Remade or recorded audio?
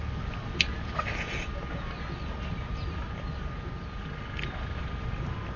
recorded